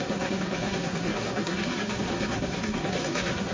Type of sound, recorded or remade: remade